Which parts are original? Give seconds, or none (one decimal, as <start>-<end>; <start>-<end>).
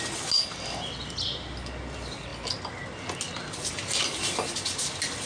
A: 0.0-5.3